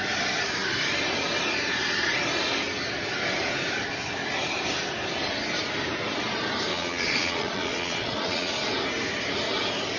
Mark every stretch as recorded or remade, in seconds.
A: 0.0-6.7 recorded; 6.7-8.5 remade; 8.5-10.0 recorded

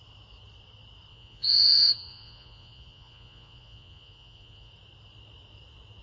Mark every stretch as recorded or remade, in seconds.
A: 0.0-1.1 recorded; 1.1-4.7 remade; 4.7-6.0 recorded

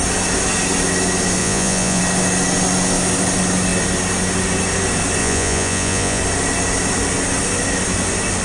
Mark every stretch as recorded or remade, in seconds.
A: 0.0-1.4 recorded; 1.4-2.0 remade; 2.0-5.2 recorded; 5.2-6.2 remade; 6.2-8.4 recorded

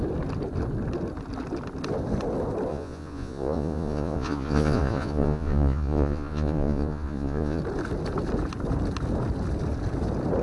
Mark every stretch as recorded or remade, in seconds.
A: 0.0-2.7 recorded; 2.7-7.6 remade; 7.6-10.4 recorded

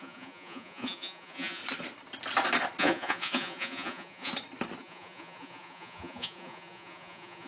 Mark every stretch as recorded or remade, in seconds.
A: 0.0-1.6 remade; 1.6-2.8 recorded; 2.8-4.3 remade; 4.3-4.8 recorded; 4.8-7.5 remade

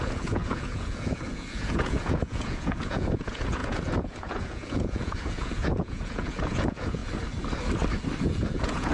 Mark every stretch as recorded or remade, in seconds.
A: 0.0-7.0 remade; 7.0-8.2 recorded; 8.2-8.9 remade

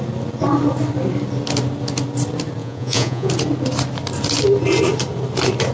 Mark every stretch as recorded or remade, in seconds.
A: 0.0-2.6 recorded; 2.6-3.3 remade; 3.3-5.7 recorded